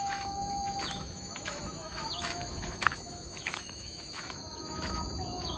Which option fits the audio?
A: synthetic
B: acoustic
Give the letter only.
A